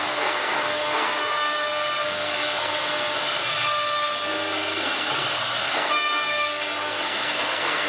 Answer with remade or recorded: remade